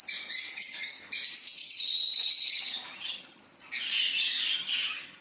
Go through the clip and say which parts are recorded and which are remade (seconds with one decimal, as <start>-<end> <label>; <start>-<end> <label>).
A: 0.0-0.5 recorded; 0.5-1.0 remade; 1.0-1.6 recorded; 1.6-3.4 remade; 3.4-4.5 recorded; 4.5-5.2 remade